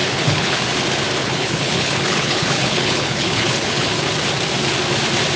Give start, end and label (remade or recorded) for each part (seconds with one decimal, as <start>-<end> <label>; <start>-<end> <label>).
0.0-0.6 remade; 0.6-1.2 recorded; 1.2-4.0 remade; 4.0-5.4 recorded